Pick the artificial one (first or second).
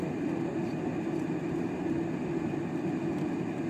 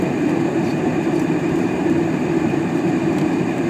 second